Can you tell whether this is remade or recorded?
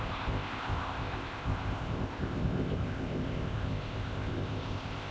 remade